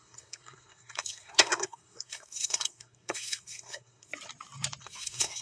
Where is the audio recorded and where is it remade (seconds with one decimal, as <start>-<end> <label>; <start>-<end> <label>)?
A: 0.0-4.1 remade; 4.1-4.8 recorded; 4.8-5.4 remade